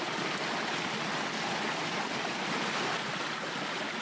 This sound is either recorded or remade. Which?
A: recorded